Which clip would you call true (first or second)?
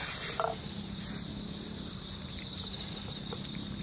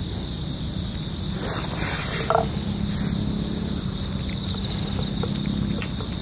second